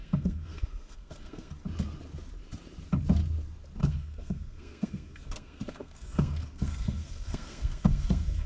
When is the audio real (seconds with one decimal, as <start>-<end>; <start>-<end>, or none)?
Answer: 1.5-3.8